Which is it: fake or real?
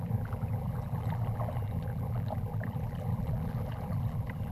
fake